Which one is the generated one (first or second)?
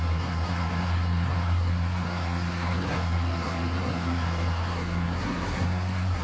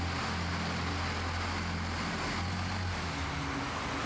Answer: first